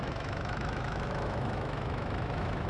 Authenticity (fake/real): fake